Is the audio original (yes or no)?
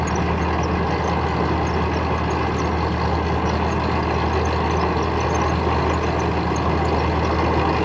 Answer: yes